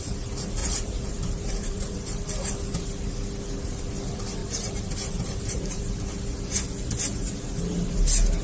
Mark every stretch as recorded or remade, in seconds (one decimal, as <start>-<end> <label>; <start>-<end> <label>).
0.0-0.6 recorded; 0.6-2.4 remade; 2.4-4.4 recorded; 4.4-5.8 remade; 5.8-8.4 recorded

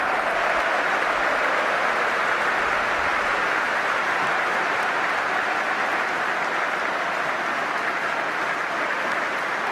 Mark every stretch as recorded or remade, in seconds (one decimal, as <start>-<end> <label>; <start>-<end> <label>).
0.0-3.1 recorded; 3.1-5.0 remade; 5.0-9.7 recorded

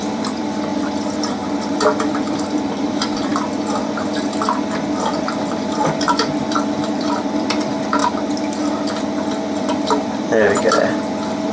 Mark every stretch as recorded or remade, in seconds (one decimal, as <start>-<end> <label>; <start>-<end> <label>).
0.0-3.3 remade; 3.3-4.7 recorded; 4.7-8.0 remade; 8.0-9.6 recorded; 9.6-11.5 remade

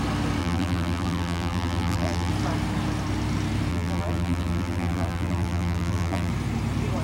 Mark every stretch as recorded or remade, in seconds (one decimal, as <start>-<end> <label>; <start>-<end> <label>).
0.0-0.4 recorded; 0.4-2.3 remade; 2.3-3.7 recorded; 3.7-6.3 remade; 6.3-7.0 recorded